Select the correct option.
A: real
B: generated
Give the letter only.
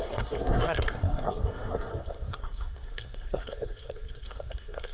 B